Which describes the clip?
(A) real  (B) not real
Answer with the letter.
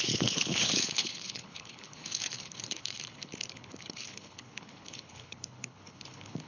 B